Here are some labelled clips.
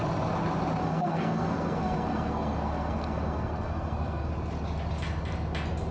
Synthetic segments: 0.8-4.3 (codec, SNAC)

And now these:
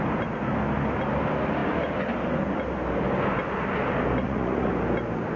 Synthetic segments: 4.2-4.7 (vocoder, Vocos)

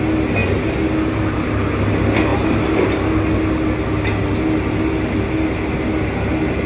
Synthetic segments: none

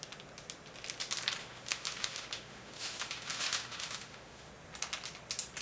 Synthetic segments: 1.4-4.5 (autoencoder, DAC-VAE)

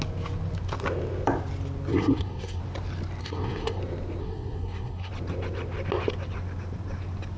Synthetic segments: 1.9-2.6 (codec, SNAC); 3.2-3.8; 4.2-5.1

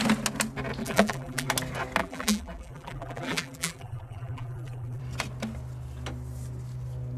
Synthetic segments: 0.8-1.5 (vocoder, BigVGAN v2); 2.0-5.0

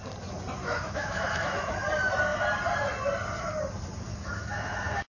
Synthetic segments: 0.6-1.7 (autoencoder, DAC-VAE); 4.1-5.1

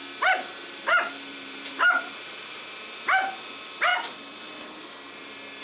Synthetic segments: 1.3-3.5 (vocoder, BigVGAN v2); 3.9-4.4